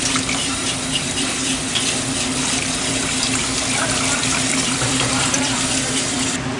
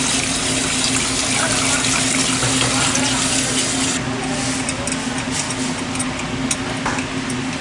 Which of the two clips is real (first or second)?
second